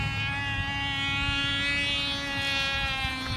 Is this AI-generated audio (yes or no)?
no